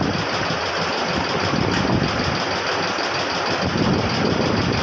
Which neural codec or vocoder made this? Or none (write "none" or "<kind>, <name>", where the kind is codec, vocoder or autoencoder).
none